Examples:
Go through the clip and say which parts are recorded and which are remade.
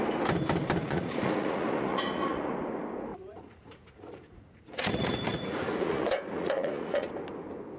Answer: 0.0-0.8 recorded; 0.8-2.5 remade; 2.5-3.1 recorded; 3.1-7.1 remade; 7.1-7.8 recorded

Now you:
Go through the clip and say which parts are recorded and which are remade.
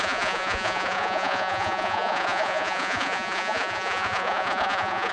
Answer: 0.0-5.1 remade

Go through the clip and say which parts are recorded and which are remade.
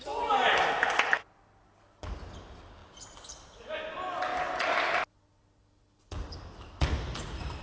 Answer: 0.0-7.6 recorded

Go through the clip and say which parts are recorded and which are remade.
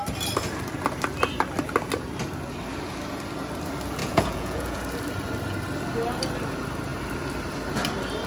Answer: 0.0-4.0 recorded; 4.0-4.8 remade; 4.8-8.3 recorded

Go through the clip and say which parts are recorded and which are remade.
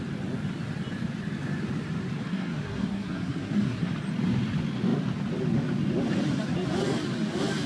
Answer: 0.0-2.3 recorded; 2.3-3.9 remade; 3.9-7.7 recorded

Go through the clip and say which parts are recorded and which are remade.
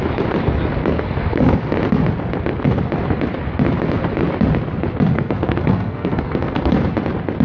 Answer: 0.0-0.8 recorded; 0.8-1.6 remade; 1.6-5.1 recorded; 5.1-6.7 remade; 6.7-7.4 recorded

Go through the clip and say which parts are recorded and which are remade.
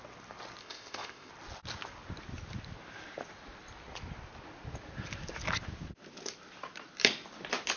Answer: 0.0-0.6 recorded; 0.6-1.3 remade; 1.3-7.8 recorded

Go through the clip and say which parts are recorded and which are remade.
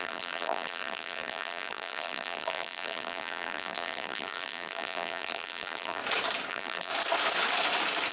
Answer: 0.0-6.0 remade; 6.0-6.5 recorded; 6.5-6.9 remade; 6.9-8.1 recorded